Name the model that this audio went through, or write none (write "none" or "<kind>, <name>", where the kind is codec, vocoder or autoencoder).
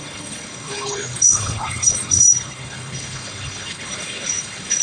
codec, HILCodec